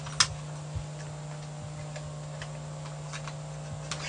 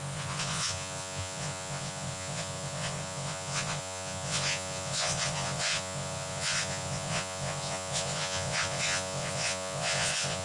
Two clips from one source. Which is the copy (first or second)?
second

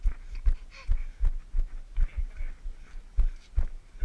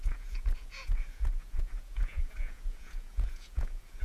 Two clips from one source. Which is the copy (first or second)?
second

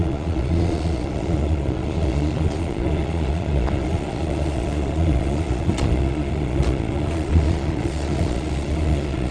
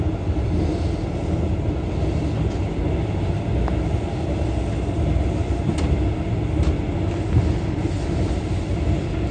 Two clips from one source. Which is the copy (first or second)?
first